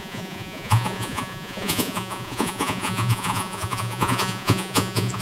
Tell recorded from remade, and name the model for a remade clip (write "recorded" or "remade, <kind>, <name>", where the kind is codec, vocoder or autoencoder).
remade, vocoder, Vocos